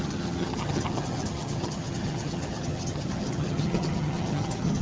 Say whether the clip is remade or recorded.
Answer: remade